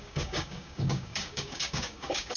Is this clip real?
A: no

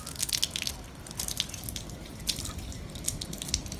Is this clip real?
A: yes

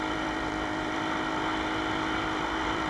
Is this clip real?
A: no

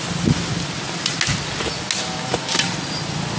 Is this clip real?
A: yes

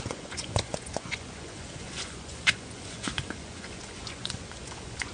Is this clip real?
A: no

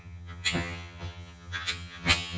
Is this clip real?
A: no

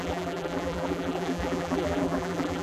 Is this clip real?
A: no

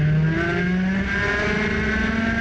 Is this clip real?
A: yes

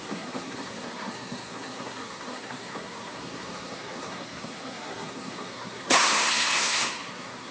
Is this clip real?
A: no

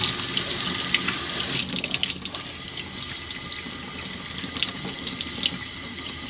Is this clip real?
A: yes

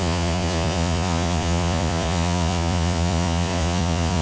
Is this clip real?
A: no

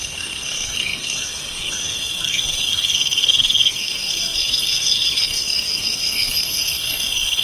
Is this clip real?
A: no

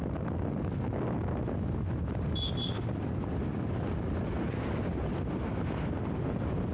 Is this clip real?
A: yes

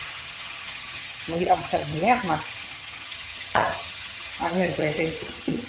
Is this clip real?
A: no